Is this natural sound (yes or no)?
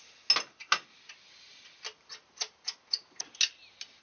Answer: yes